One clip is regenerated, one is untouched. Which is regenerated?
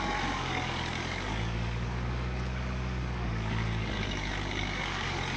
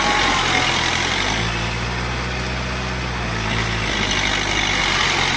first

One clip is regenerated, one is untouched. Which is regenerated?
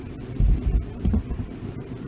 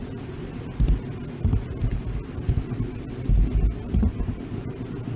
first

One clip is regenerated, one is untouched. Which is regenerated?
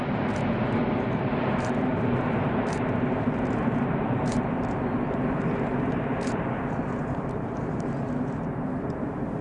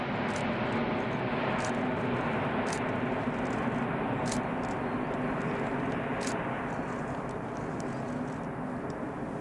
first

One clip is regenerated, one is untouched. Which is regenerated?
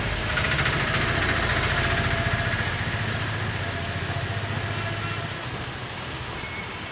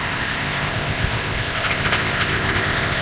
second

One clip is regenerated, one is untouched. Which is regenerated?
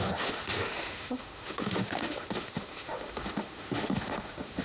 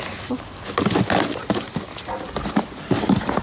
first